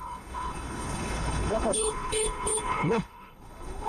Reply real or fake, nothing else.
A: fake